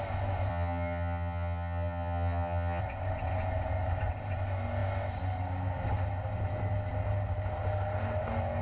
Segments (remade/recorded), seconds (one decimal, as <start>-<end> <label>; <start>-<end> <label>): 0.0-0.5 recorded; 0.5-2.8 remade; 2.8-8.6 recorded